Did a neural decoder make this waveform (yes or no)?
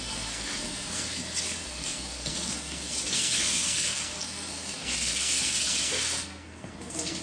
yes